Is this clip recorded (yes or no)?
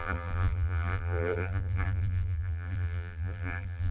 no